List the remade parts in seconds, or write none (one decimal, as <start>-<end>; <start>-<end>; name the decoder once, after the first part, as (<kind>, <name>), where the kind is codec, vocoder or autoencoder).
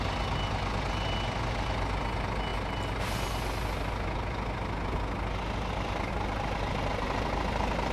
none